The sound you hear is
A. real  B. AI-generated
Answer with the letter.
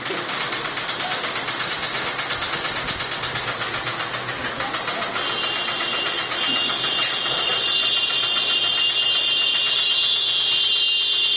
A